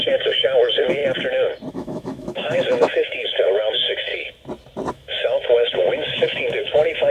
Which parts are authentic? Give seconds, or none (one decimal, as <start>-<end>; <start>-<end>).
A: 1.0-1.7; 4.1-4.9